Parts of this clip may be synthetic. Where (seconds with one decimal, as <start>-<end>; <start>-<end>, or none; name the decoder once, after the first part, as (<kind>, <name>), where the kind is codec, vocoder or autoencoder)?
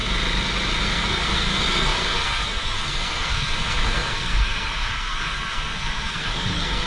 0.8-6.9 (codec, SNAC)